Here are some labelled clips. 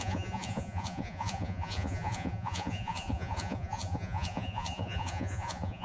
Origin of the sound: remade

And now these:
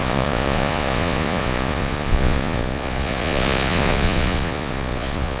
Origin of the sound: remade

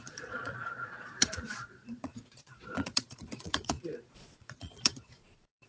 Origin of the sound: remade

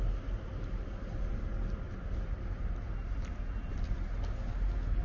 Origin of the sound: recorded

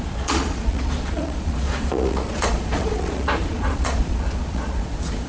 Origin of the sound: remade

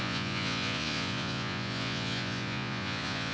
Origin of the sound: remade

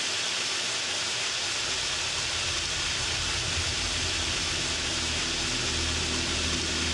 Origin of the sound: recorded